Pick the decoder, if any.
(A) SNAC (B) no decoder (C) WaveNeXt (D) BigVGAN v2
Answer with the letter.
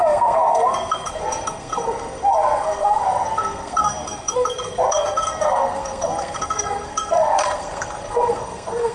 A